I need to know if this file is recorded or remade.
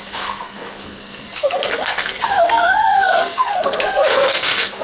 remade